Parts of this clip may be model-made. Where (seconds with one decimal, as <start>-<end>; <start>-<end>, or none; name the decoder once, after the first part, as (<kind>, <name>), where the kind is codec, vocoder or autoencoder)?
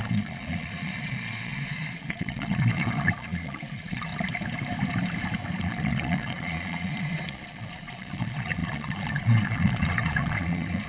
0.0-4.1 (vocoder, Vocos); 5.6-10.9